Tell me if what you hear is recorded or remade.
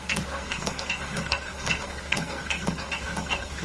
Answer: remade